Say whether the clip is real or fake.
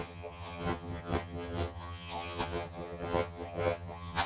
fake